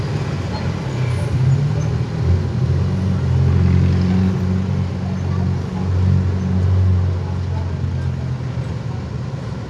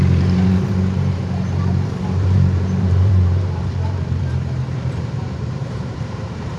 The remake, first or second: second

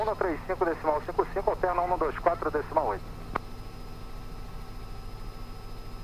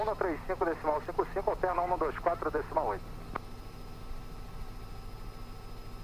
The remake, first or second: second